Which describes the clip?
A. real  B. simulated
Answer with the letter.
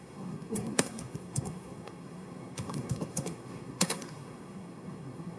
B